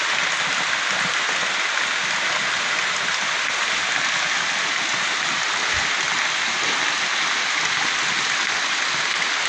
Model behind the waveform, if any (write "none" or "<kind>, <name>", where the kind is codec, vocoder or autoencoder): none